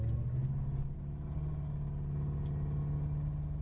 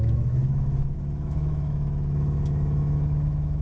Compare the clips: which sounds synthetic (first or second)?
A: second